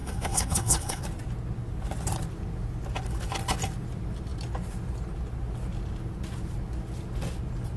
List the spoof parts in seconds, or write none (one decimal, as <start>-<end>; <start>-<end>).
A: 0.0-1.0